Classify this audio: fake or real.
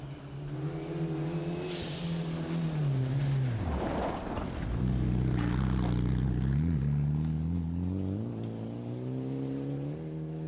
real